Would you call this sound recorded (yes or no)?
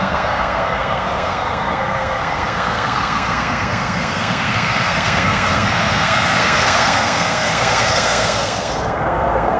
no